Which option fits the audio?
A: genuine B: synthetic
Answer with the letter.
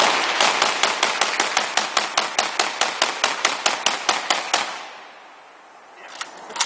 A